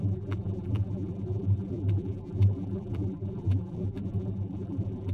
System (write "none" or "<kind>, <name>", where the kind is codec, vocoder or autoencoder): vocoder, BigVGAN v2